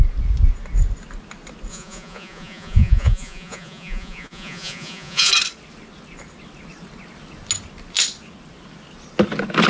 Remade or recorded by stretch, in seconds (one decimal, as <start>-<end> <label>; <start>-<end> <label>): 0.0-1.7 recorded; 1.7-5.3 remade; 5.3-9.7 recorded